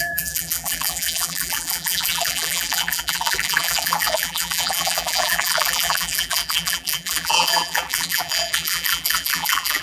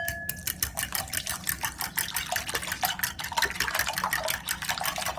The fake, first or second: first